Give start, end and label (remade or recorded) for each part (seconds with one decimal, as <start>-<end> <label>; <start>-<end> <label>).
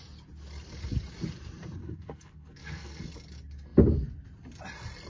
0.0-1.8 recorded; 1.8-3.0 remade; 3.0-5.1 recorded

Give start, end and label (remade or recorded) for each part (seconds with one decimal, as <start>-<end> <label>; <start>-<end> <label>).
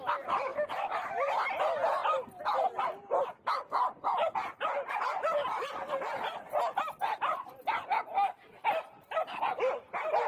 0.0-10.3 recorded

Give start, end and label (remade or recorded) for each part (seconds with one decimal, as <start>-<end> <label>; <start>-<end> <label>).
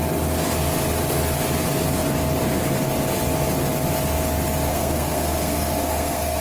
0.0-4.7 recorded; 4.7-6.4 remade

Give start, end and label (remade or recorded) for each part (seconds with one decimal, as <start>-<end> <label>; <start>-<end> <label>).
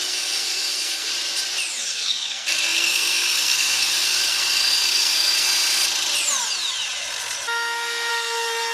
0.0-1.1 remade; 1.1-1.8 recorded; 1.8-5.5 remade; 5.5-8.1 recorded; 8.1-8.7 remade